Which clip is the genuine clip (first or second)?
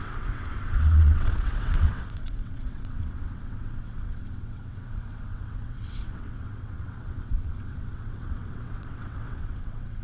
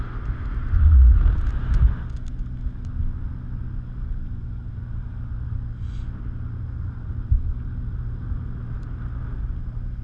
second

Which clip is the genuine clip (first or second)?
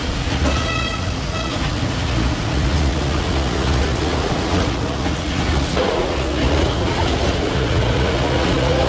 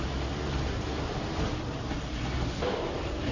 second